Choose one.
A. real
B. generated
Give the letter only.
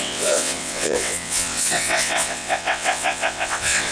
B